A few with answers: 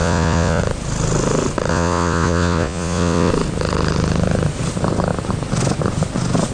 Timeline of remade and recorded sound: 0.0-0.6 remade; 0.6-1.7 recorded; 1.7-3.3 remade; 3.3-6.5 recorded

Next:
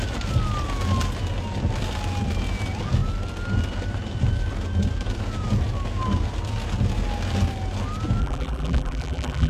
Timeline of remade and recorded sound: 0.0-8.2 recorded; 8.2-9.5 remade